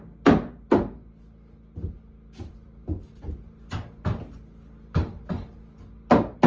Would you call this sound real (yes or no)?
yes